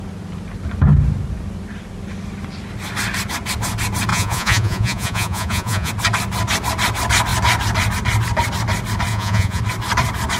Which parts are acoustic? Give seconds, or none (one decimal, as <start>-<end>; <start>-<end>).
0.0-4.1; 5.9-9.1; 9.6-10.4